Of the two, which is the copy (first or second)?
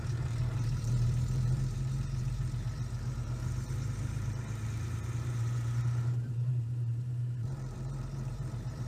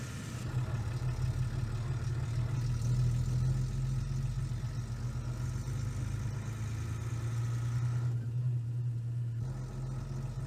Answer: first